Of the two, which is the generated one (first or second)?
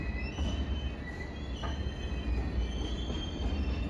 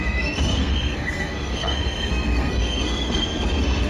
second